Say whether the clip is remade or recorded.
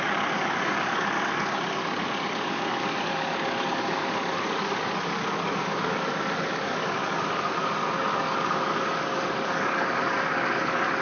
remade